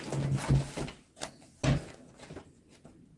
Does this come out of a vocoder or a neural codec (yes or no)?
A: no